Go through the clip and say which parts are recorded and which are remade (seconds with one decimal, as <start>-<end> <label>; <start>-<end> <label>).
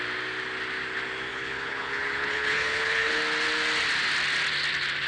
0.0-1.3 recorded; 1.3-3.2 remade; 3.2-5.1 recorded